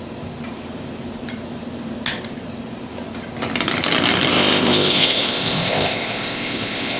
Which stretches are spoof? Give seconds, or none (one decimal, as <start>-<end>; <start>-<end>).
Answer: 4.3-7.0